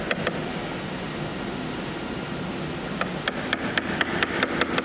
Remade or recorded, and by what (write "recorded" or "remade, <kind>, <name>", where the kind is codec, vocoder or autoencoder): recorded